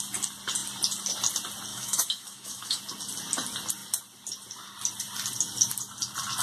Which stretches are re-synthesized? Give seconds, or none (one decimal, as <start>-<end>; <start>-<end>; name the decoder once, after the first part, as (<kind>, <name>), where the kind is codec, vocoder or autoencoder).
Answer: 1.7-2.8 (autoencoder, DAC-VAE)